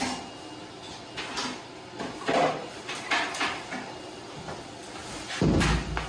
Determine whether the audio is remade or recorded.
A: recorded